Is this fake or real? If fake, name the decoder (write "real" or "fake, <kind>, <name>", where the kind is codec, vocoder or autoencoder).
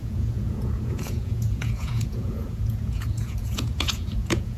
fake, vocoder, Vocos